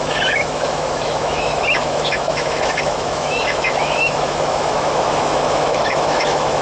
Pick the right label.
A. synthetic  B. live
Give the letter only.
A